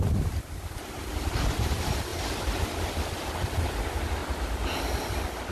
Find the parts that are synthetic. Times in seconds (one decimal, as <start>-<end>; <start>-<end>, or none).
none